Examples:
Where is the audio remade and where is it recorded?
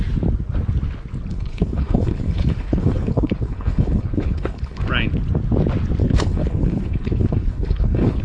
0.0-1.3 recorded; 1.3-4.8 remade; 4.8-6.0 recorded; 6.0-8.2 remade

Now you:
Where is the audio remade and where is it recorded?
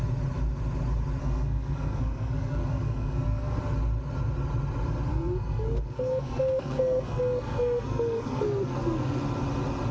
0.0-1.2 recorded; 1.2-3.6 remade; 3.6-5.1 recorded; 5.1-9.2 remade; 9.2-9.9 recorded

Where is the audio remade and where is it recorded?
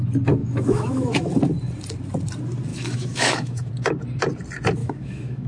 0.0-0.4 recorded; 0.4-1.3 remade; 1.3-2.7 recorded; 2.7-3.7 remade; 3.7-4.8 recorded; 4.8-5.5 remade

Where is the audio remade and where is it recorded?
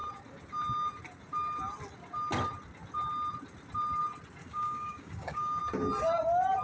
0.0-4.4 recorded; 4.4-5.6 remade; 5.6-6.6 recorded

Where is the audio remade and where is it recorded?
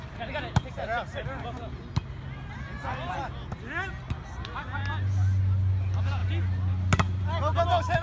0.0-8.0 recorded